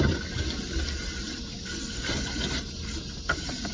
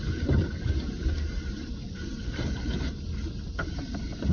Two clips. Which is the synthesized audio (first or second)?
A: second